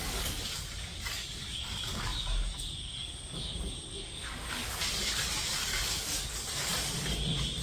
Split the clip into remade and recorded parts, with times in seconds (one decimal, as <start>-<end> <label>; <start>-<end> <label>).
0.0-6.7 remade; 6.7-7.6 recorded